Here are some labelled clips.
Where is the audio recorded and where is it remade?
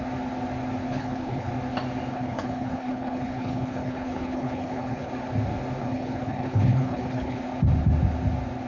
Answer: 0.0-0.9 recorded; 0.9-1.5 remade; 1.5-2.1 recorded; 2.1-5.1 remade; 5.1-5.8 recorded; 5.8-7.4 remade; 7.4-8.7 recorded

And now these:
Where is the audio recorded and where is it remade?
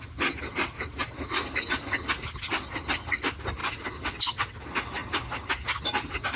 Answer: 0.0-6.4 recorded